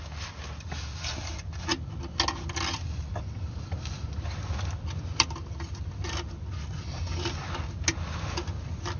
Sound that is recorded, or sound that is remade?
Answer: recorded